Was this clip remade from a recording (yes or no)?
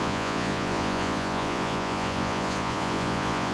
yes